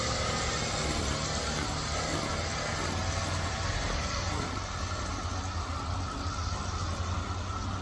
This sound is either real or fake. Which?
real